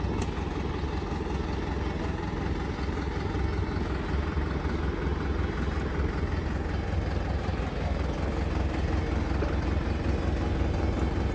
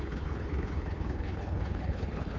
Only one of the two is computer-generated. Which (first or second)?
second